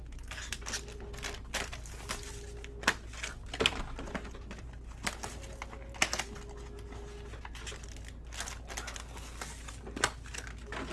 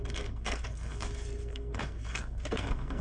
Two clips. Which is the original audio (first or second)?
first